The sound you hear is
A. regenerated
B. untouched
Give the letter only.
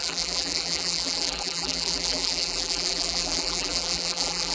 A